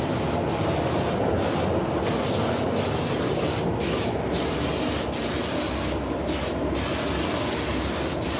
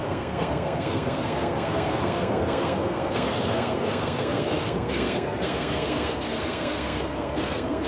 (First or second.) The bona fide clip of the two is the first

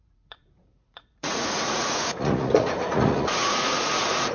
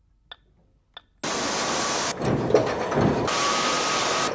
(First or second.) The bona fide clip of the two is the second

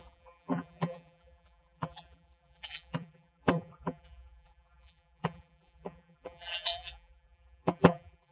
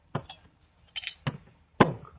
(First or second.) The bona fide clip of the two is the second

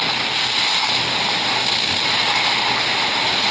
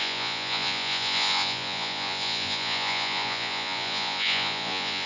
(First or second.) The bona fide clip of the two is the first